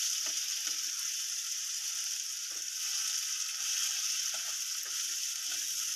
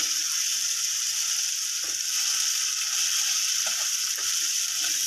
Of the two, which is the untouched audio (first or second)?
first